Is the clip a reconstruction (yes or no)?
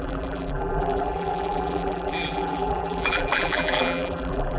yes